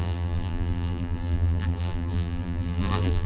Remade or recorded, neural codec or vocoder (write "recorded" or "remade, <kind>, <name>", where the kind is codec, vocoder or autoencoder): remade, vocoder, BigVGAN v2